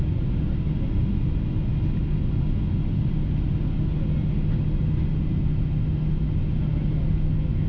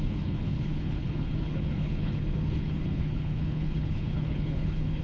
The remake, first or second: second